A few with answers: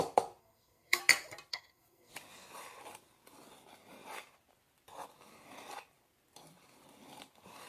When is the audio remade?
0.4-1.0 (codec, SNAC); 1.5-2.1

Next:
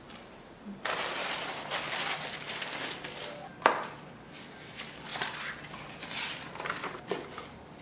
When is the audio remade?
1.2-1.7 (vocoder, BigVGAN v2)

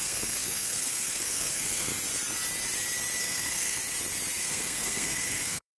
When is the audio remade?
0.0-1.9 (codec, SNAC); 3.2-3.8; 4.4-5.8

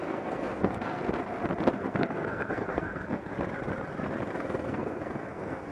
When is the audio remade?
0.0-1.0 (codec, SNAC); 1.7-3.3; 4.3-5.7

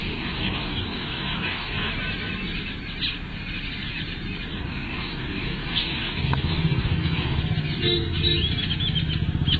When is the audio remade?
0.0-1.9 (codec, DAC); 4.5-7.4

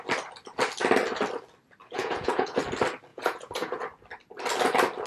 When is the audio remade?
1.8-2.6 (vocoder, Vocos); 3.1-3.8

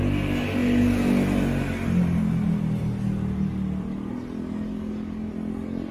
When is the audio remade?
4.7-5.3 (codec, DAC)

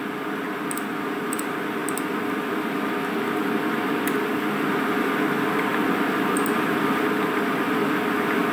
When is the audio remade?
none